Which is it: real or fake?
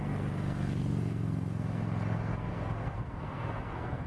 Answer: fake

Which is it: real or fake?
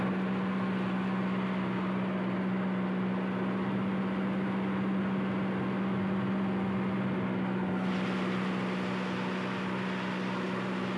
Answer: real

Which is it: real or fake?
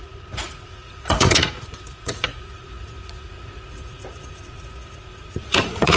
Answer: fake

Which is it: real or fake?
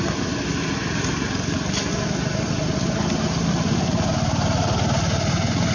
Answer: real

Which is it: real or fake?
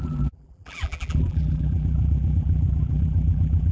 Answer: fake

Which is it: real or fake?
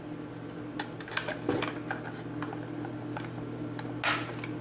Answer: real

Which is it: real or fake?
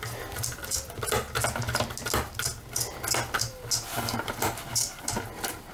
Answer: real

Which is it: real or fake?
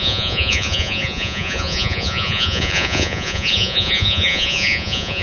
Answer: fake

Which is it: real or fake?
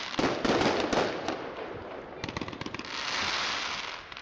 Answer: real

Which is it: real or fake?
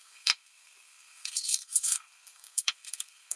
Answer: fake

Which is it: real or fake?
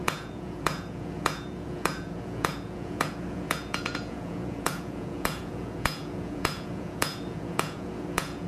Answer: fake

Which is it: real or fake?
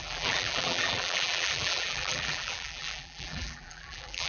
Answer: fake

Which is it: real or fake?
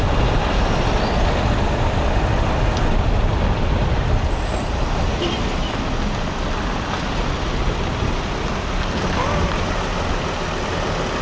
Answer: real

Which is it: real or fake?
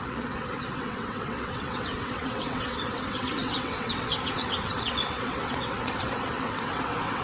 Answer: fake